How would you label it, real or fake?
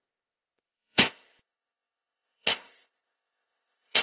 fake